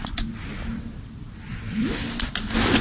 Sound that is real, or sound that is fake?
real